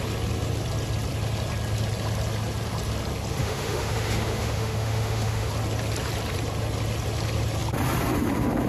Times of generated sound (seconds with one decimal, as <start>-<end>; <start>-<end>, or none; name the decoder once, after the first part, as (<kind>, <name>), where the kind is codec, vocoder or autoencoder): 3.4-5.5 (autoencoder, DAC-VAE)